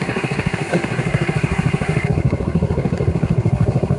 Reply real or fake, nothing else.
fake